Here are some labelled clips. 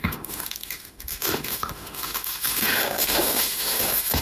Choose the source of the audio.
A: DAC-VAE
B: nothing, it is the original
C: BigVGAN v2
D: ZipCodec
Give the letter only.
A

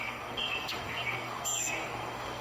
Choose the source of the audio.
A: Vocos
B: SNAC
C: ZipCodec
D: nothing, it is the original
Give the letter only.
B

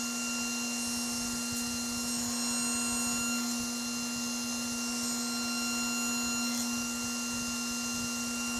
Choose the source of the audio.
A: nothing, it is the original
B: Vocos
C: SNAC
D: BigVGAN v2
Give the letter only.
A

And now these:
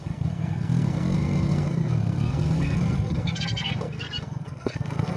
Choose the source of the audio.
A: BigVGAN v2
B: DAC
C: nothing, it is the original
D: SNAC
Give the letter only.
D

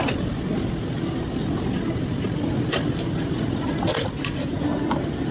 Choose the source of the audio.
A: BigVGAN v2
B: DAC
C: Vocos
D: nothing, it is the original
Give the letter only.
D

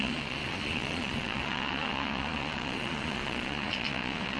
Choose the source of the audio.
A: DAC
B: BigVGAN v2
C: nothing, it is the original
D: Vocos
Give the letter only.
D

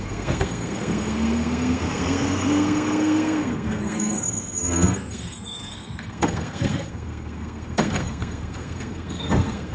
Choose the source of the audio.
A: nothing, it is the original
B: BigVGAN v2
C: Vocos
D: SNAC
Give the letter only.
D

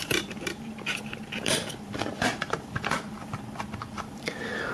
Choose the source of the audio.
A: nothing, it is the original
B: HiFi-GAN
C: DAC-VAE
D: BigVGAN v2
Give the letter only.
D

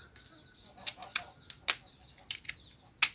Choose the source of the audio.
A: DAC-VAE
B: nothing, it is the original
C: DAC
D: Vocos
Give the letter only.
B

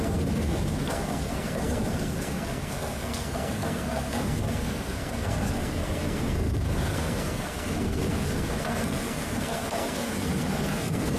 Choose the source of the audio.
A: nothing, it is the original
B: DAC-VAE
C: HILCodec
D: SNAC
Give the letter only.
D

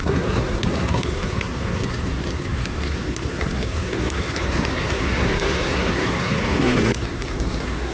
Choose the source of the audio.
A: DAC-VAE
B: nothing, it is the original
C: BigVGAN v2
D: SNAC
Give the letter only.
D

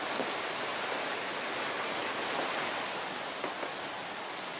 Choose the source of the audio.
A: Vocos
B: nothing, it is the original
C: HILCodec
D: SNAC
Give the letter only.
B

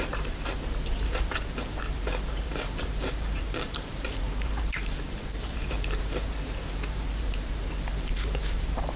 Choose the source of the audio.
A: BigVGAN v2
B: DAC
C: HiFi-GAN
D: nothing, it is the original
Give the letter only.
A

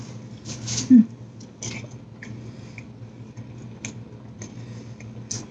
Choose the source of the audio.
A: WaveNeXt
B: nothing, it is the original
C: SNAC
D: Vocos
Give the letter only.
B